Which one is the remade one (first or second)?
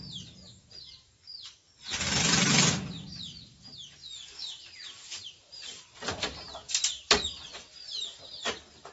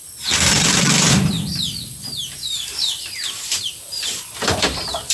second